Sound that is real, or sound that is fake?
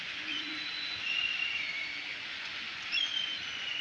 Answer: fake